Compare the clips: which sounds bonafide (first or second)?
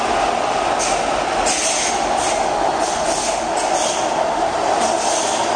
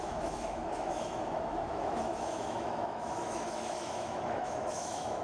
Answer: first